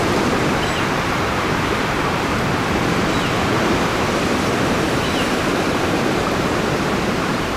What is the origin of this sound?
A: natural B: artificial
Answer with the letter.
B